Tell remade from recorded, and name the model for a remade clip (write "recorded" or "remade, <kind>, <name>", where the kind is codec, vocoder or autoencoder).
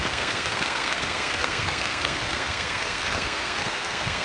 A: remade, codec, SNAC